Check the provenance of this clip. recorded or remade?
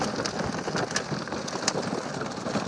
recorded